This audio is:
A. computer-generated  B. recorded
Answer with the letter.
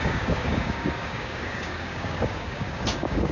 A